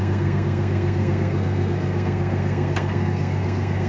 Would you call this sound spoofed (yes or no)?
yes